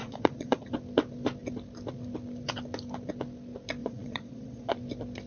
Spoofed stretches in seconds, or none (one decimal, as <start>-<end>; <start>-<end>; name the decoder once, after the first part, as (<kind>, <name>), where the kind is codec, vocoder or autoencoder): 0.0-0.7 (vocoder, Vocos); 3.8-4.7